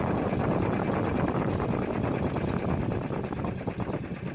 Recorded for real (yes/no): yes